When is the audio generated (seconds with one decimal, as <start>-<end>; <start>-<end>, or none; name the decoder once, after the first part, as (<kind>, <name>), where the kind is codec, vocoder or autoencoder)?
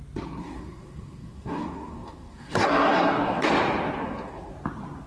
0.4-3.4 (codec, SNAC); 4.0-4.5